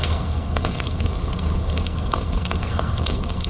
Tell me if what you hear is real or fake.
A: fake